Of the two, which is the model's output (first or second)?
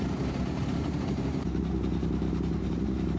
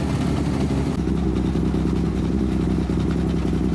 first